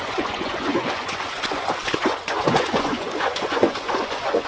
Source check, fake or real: fake